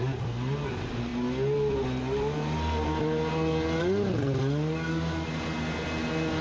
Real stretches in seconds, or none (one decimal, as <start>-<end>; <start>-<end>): 0.0-6.4